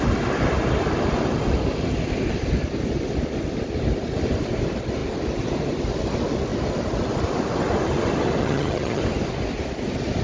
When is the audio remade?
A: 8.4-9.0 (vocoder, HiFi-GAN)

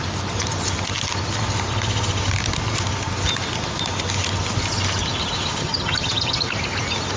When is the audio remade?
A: 5.6-6.5 (vocoder, HiFi-GAN)

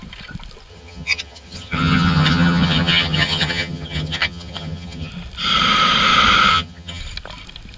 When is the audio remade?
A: 0.7-5.1 (vocoder, HiFi-GAN); 6.5-7.0